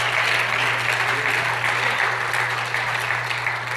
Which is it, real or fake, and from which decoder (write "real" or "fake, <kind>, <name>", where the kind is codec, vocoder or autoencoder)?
real